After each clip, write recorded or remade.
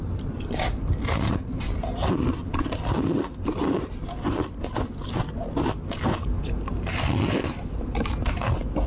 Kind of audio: recorded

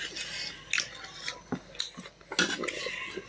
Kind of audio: recorded